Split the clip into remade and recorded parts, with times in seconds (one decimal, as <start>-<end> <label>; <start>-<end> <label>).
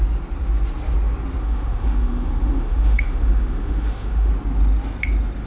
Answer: 0.0-1.4 recorded; 1.4-4.3 remade; 4.3-5.5 recorded